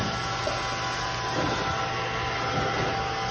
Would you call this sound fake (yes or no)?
no